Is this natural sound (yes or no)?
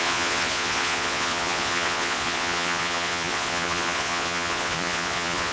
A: no